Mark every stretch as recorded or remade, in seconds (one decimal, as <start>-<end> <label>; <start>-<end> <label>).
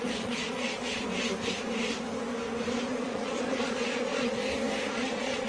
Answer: 0.0-1.0 remade; 1.0-2.9 recorded; 2.9-4.4 remade; 4.4-4.9 recorded; 4.9-5.5 remade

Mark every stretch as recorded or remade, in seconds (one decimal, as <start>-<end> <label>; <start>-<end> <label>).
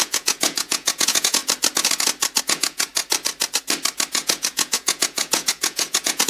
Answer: 0.0-1.4 remade; 1.4-2.4 recorded; 2.4-2.9 remade; 2.9-4.1 recorded; 4.1-6.3 remade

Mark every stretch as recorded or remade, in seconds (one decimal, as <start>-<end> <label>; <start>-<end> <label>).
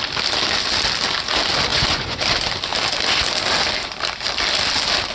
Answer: 0.0-1.7 recorded; 1.7-2.2 remade; 2.2-5.1 recorded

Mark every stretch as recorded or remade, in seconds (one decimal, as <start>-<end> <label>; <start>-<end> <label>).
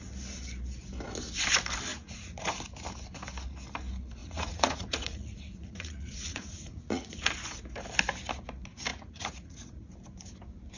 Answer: 0.0-1.9 recorded; 1.9-2.5 remade; 2.5-4.2 recorded; 4.2-7.3 remade; 7.3-8.9 recorded; 8.9-9.9 remade; 9.9-10.8 recorded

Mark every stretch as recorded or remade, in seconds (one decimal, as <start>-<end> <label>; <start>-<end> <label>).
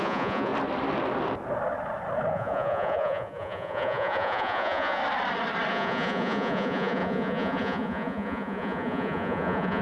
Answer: 0.0-0.5 remade; 0.5-2.3 recorded; 2.3-5.0 remade; 5.0-5.7 recorded; 5.7-9.8 remade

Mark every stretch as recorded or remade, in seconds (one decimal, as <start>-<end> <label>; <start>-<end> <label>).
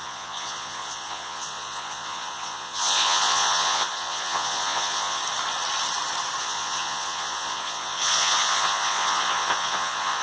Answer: 0.0-5.2 remade; 5.2-6.4 recorded; 6.4-10.2 remade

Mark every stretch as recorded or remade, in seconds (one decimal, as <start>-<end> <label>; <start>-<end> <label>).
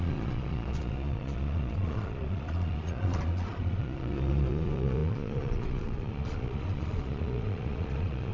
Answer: 0.0-8.3 remade